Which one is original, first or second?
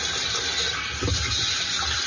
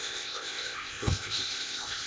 first